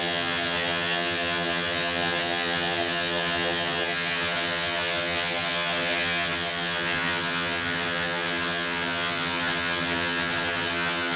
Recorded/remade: remade